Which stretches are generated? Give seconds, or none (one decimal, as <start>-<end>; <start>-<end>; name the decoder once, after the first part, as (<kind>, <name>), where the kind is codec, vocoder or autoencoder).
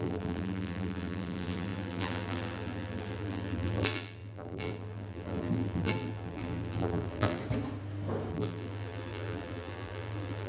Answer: 0.0-7.4 (vocoder, BigVGAN v2); 8.3-10.5